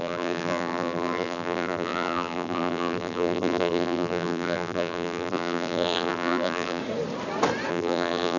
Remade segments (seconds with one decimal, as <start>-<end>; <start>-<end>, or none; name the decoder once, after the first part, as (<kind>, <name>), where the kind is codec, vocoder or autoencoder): 0.0-6.8 (vocoder, BigVGAN v2); 7.7-8.4